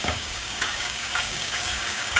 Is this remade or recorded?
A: remade